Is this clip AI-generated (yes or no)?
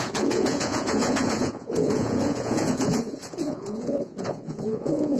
yes